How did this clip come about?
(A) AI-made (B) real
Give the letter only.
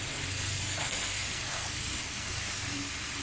A